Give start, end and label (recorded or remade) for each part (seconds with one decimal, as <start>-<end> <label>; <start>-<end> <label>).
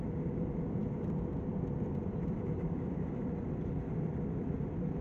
0.0-5.0 recorded